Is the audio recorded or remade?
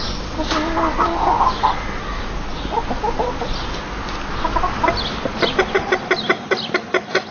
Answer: recorded